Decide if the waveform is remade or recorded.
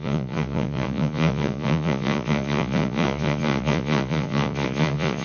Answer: remade